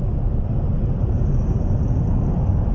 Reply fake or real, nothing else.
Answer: real